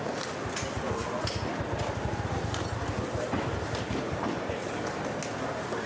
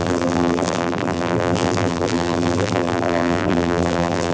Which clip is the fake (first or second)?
second